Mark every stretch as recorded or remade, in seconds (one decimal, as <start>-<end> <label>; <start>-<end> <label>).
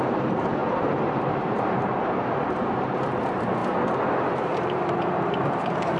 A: 0.0-3.6 remade; 3.6-4.4 recorded; 4.4-6.0 remade